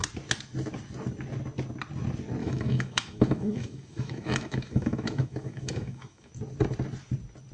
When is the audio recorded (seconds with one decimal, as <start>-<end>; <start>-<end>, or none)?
0.0-2.4; 6.3-7.5